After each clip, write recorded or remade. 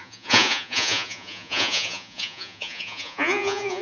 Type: remade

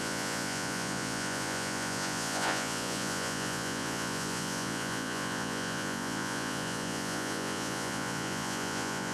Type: remade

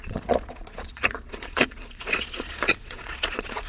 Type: remade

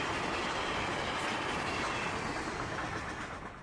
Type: recorded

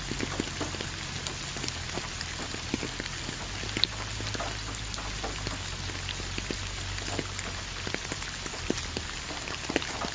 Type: recorded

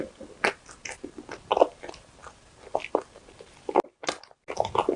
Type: recorded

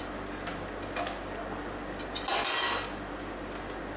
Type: recorded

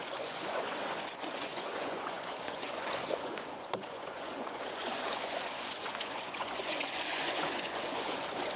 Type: remade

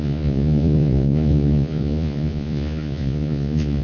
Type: remade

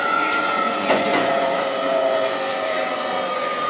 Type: remade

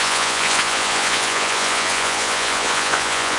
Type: remade